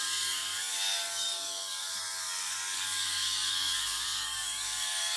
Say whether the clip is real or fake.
fake